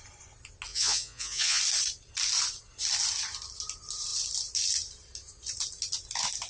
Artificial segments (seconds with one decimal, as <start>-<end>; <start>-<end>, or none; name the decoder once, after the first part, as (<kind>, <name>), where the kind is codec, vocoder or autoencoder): 0.7-1.6 (vocoder, Vocos)